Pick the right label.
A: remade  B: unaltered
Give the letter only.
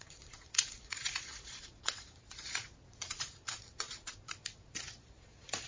A